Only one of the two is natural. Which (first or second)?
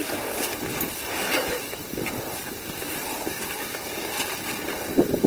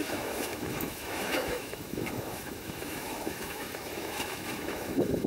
first